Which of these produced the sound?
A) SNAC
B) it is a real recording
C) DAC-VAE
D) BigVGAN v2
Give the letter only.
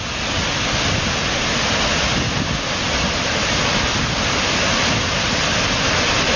B